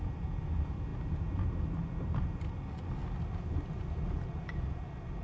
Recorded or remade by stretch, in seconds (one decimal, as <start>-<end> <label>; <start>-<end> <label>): 0.0-5.2 recorded